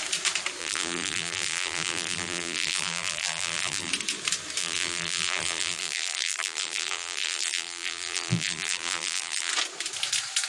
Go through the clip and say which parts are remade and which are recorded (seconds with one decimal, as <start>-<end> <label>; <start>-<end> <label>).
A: 0.0-0.6 recorded; 0.6-3.9 remade; 3.9-4.6 recorded; 4.6-9.5 remade; 9.5-10.5 recorded